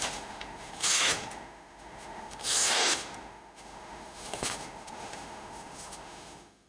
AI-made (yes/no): yes